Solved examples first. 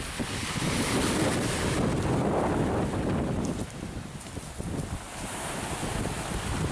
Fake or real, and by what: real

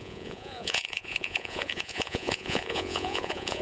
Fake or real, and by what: fake, vocoder, Vocos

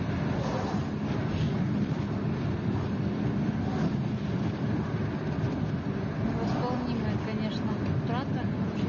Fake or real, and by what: real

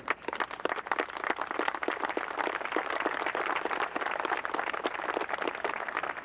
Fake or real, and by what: real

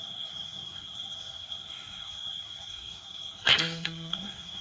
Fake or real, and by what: fake, codec, SNAC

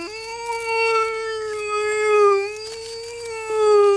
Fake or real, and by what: real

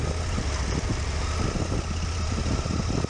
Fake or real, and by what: real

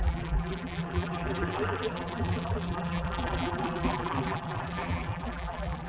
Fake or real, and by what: fake, vocoder, BigVGAN v2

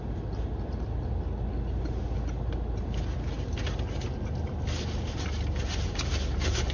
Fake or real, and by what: real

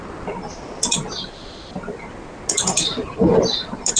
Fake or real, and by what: real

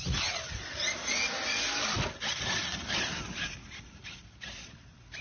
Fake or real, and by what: real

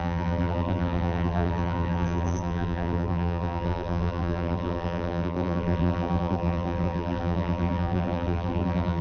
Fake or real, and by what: fake, vocoder, BigVGAN v2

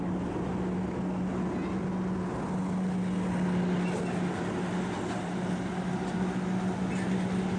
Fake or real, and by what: real